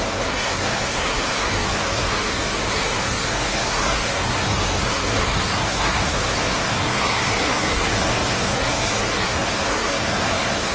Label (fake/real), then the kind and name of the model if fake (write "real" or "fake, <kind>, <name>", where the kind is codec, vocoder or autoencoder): fake, codec, SNAC